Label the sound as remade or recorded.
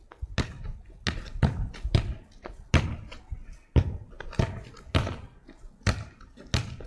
recorded